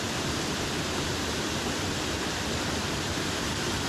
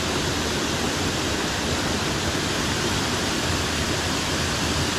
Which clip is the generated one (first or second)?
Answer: first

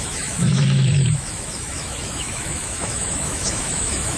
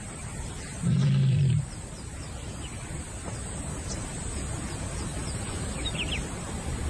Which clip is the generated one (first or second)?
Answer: first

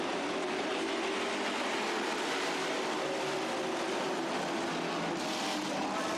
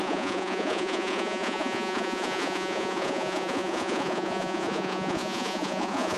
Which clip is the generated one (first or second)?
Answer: second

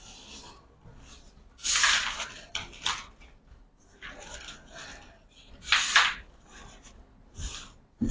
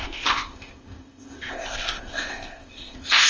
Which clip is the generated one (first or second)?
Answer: second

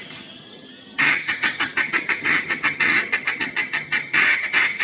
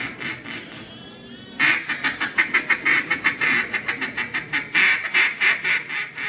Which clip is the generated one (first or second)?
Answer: first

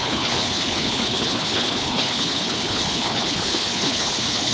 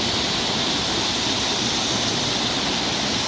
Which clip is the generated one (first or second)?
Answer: first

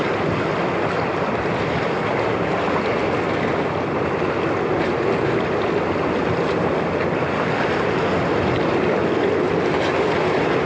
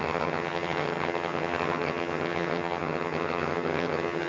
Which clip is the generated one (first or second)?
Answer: second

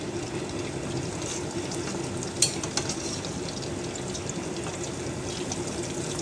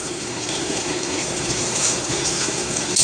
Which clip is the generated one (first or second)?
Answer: second